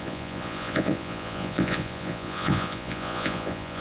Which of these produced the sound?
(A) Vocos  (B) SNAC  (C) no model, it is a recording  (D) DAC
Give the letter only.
A